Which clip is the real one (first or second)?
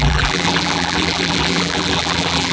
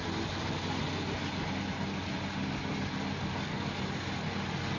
second